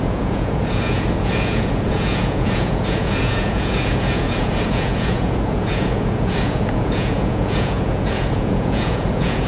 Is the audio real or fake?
fake